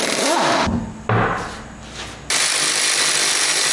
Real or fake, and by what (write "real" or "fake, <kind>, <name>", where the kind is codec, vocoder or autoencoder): real